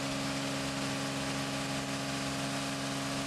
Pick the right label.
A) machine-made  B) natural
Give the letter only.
B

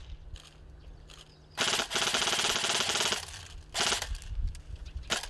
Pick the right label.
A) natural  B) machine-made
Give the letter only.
A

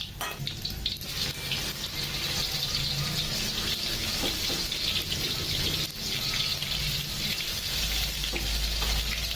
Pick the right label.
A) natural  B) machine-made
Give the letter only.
A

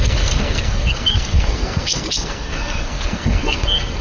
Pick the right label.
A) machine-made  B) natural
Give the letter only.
A